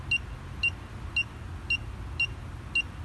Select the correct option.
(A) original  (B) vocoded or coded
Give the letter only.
A